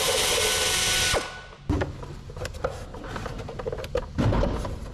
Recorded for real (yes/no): yes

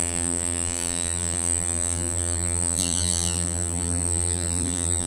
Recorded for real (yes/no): no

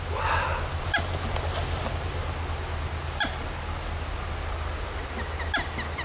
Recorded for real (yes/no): yes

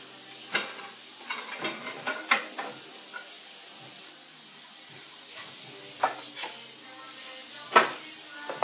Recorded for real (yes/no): yes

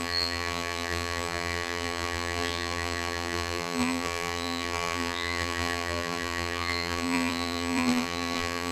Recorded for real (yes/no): no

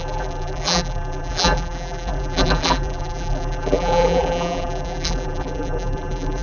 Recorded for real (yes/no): no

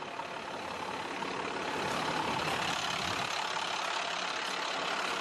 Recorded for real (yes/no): no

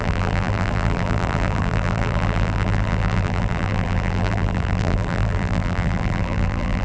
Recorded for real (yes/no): no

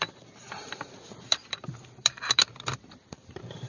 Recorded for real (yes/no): no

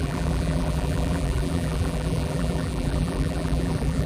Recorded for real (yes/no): no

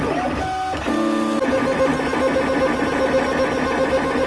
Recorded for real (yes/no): yes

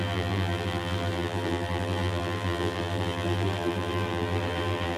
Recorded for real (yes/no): no